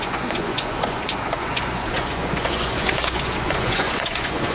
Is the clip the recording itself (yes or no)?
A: no